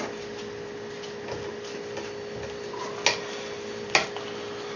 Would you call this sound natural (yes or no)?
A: yes